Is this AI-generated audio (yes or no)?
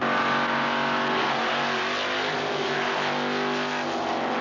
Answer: no